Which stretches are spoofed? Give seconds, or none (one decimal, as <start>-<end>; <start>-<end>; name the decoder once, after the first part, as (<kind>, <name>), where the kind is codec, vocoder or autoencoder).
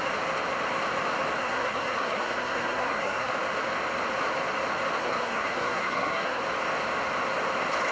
1.4-3.3 (codec, SNAC); 5.0-6.4